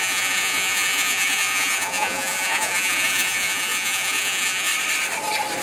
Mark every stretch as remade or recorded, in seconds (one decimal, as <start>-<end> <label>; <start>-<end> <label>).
0.0-4.7 remade; 4.7-5.6 recorded